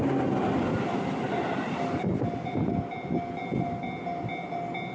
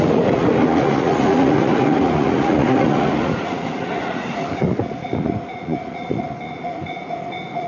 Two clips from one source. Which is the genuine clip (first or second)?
first